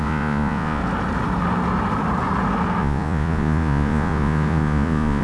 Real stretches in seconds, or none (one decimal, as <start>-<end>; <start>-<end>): 0.8-2.8